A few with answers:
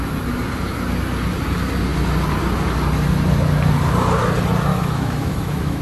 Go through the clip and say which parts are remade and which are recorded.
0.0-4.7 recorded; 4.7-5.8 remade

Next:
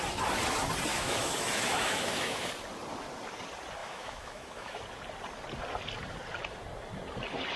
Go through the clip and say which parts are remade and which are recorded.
0.0-0.9 recorded; 0.9-2.5 remade; 2.5-3.8 recorded; 3.8-4.8 remade; 4.8-7.6 recorded

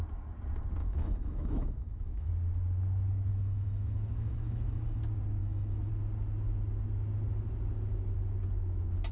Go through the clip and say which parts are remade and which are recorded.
0.0-0.8 recorded; 0.8-2.3 remade; 2.3-3.3 recorded; 3.3-5.0 remade; 5.0-5.4 recorded; 5.4-5.9 remade; 5.9-9.1 recorded

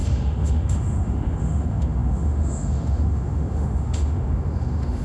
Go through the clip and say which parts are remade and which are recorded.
0.0-5.0 remade

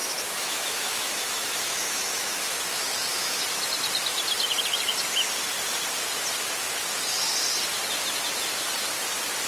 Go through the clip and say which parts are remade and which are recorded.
0.0-3.4 remade; 3.4-9.5 recorded